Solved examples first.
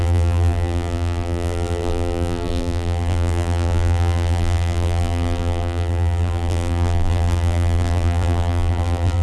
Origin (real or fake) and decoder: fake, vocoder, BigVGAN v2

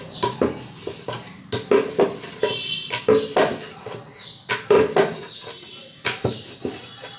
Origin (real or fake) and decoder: real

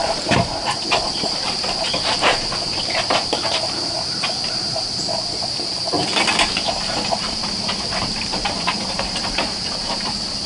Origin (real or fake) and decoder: fake, vocoder, BigVGAN v2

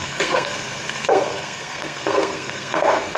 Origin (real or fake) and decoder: fake, codec, SNAC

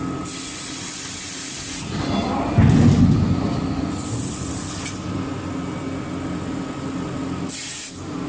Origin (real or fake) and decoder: real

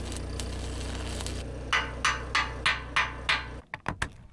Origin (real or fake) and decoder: real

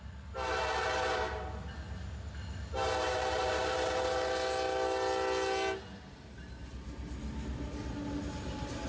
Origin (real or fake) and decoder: real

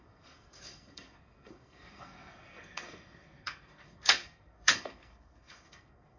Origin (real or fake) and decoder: fake, codec, SNAC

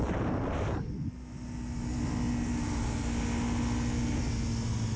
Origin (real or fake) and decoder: real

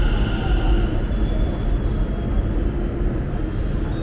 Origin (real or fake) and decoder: real